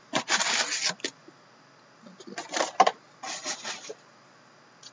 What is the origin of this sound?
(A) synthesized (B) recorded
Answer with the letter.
B